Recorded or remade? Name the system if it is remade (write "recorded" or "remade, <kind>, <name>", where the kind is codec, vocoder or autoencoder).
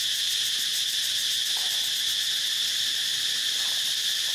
recorded